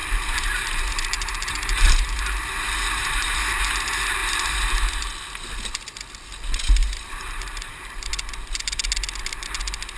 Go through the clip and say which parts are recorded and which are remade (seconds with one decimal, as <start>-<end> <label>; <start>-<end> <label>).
0.0-3.6 remade; 3.6-4.2 recorded; 4.2-5.1 remade; 5.1-6.8 recorded; 6.8-8.1 remade; 8.1-10.0 recorded